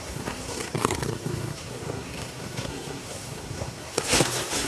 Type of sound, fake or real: fake